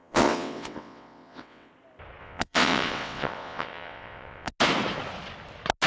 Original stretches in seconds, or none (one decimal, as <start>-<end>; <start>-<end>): 1.7-2.2; 4.5-5.9